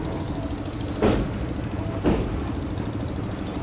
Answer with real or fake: real